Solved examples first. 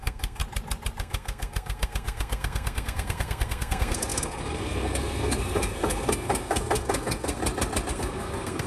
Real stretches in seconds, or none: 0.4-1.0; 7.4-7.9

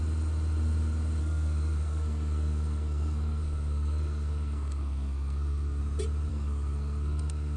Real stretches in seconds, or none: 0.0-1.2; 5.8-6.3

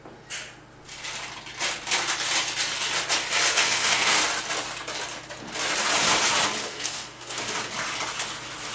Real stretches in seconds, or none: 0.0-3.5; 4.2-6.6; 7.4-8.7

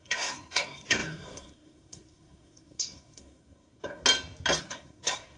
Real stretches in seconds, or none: 4.0-4.6